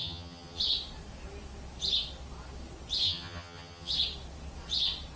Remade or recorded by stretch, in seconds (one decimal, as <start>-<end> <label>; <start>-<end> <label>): 0.0-0.6 remade; 0.6-3.0 recorded; 3.0-3.9 remade; 3.9-5.2 recorded